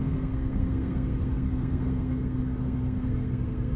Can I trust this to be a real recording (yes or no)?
no